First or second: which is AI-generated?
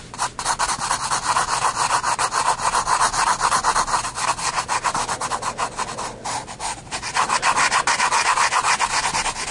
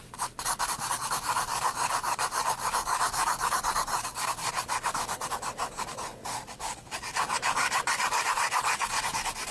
second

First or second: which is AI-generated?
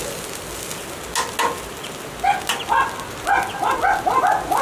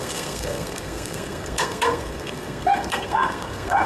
second